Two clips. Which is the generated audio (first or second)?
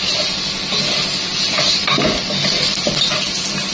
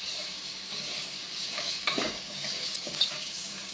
second